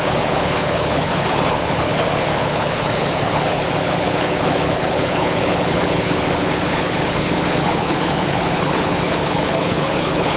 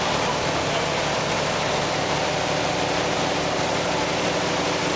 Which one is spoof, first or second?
first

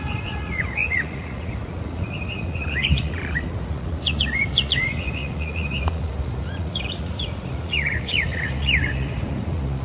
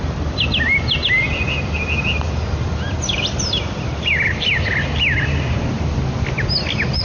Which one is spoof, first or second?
first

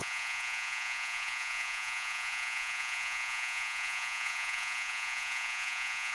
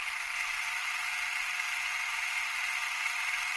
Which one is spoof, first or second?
first